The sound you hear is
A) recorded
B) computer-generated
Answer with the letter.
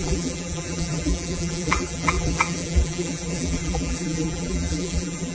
B